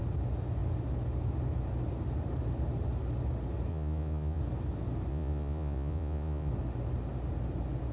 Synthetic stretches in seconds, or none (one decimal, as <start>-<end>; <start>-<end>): 3.7-4.4; 5.1-6.5